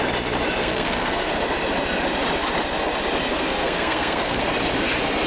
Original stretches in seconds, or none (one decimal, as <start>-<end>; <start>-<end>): 0.0-0.6; 1.3-3.3; 4.4-5.3